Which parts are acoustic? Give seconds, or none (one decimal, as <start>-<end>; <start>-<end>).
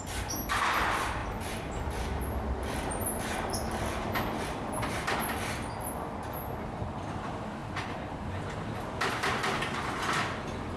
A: 0.0-7.6; 8.4-10.8